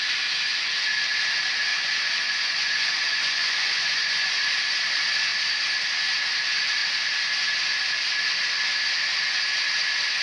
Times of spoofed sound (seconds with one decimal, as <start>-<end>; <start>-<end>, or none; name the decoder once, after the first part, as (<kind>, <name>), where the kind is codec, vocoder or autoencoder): 1.7-4.4 (vocoder, Vocos)